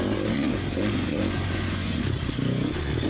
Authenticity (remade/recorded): remade